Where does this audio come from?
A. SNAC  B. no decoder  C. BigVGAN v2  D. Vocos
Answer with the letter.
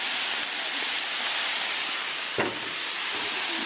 B